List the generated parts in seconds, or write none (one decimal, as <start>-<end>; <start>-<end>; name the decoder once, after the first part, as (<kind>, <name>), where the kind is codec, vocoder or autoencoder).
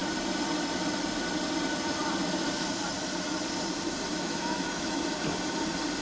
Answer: 4.1-5.0 (autoencoder, DAC-VAE)